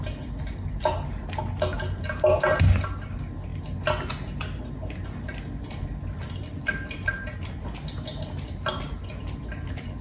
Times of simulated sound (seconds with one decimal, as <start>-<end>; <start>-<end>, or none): none